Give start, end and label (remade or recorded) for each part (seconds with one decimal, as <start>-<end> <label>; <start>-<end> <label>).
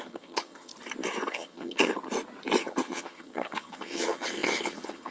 0.0-0.7 remade; 0.7-1.3 recorded; 1.3-1.9 remade; 1.9-2.6 recorded; 2.6-5.1 remade